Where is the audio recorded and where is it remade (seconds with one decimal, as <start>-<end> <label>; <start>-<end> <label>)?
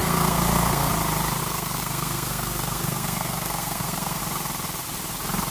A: 0.0-0.9 remade; 0.9-1.4 recorded; 1.4-4.2 remade; 4.2-5.5 recorded